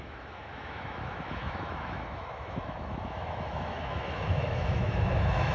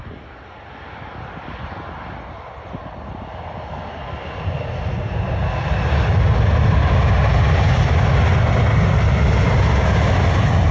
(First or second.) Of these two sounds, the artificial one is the first